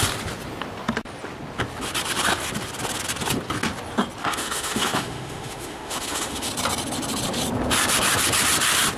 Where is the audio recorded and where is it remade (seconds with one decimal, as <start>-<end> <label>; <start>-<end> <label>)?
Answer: 0.0-4.2 recorded; 4.2-6.5 remade; 6.5-9.0 recorded